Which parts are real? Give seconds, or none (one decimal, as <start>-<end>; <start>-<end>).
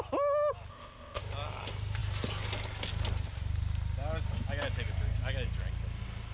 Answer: 0.0-0.7; 1.2-6.3